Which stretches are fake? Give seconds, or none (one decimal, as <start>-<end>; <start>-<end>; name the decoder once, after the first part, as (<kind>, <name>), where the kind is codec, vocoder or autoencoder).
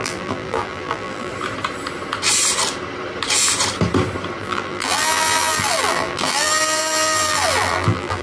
0.0-1.3 (vocoder, BigVGAN v2); 4.4-8.2